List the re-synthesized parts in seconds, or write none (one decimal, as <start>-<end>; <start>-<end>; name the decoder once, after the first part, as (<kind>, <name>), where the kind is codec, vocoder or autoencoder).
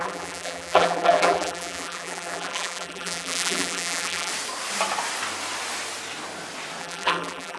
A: 0.0-4.3 (vocoder, BigVGAN v2); 6.8-7.6